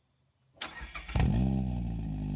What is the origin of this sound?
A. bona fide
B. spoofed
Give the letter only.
A